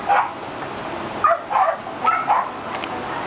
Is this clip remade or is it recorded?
recorded